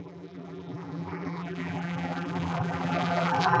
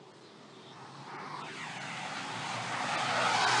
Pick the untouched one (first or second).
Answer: second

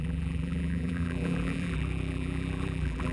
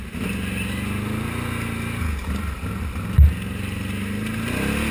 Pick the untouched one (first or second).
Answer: second